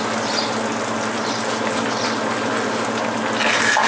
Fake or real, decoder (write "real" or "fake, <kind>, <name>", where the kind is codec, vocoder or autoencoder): real